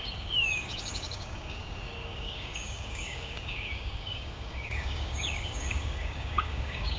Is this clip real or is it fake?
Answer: fake